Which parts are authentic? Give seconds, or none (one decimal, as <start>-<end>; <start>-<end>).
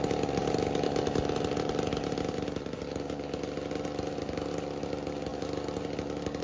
0.0-6.4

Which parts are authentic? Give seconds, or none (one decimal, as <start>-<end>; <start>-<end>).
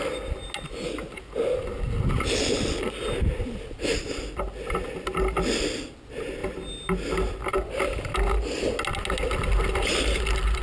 0.0-10.6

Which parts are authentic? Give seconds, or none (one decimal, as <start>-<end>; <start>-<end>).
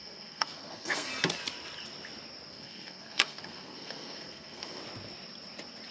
1.1-2.5; 4.8-5.9